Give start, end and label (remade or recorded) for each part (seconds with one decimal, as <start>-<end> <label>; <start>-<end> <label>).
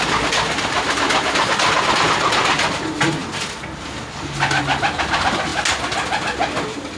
0.0-7.0 recorded